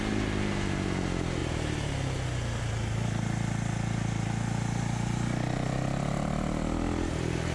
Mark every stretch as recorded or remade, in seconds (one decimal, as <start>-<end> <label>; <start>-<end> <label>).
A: 0.0-7.5 recorded